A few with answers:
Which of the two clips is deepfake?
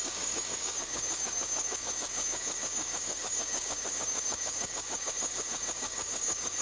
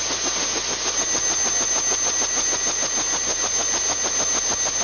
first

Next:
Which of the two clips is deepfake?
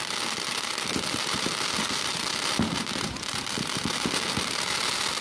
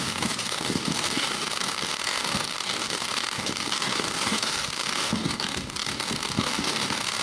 second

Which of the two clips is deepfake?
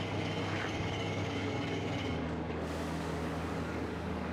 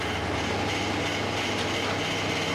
first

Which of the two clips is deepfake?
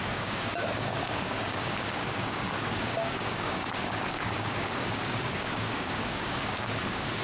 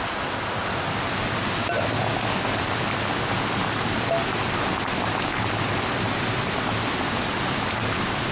first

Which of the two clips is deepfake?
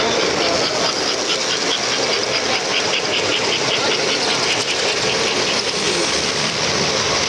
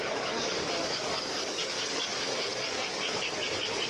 second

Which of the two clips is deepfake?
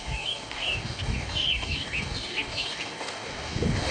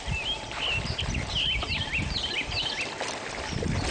first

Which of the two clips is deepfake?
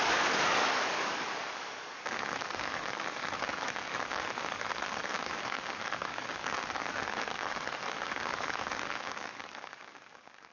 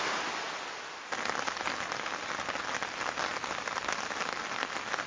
first